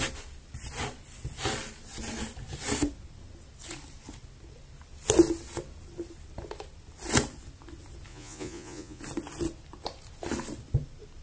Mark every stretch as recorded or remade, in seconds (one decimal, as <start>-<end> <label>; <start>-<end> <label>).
0.0-8.1 recorded; 8.1-9.0 remade; 9.0-11.2 recorded